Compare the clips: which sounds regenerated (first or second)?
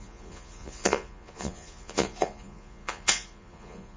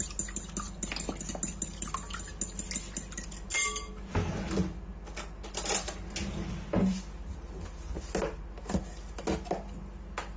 first